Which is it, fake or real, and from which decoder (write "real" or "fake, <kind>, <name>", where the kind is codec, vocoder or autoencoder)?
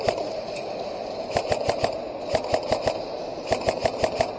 real